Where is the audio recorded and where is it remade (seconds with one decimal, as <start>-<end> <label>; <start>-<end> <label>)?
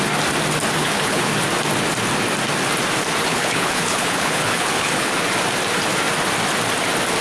0.0-0.8 recorded; 0.8-1.3 remade; 1.3-3.3 recorded; 3.3-5.1 remade; 5.1-7.2 recorded